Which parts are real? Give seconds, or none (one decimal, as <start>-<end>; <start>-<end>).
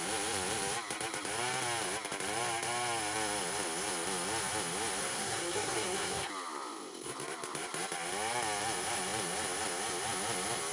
0.0-5.0; 6.3-10.7